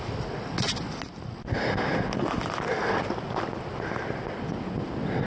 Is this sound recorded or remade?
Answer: recorded